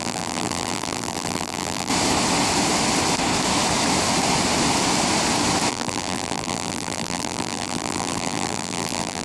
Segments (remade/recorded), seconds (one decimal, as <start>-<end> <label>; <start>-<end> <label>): 0.0-1.9 remade; 1.9-5.7 recorded; 5.7-9.2 remade